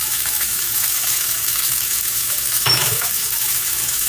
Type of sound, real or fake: fake